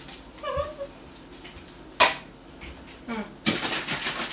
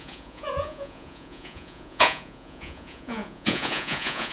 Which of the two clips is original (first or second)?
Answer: first